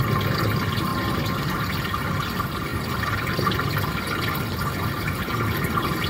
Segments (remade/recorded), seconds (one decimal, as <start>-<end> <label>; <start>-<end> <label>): 0.0-0.9 recorded; 0.9-1.7 remade; 1.7-2.7 recorded; 2.7-3.3 remade; 3.3-6.1 recorded